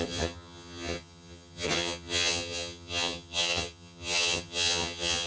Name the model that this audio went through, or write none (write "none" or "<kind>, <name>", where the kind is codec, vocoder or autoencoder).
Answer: vocoder, HiFi-GAN